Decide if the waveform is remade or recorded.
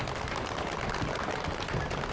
recorded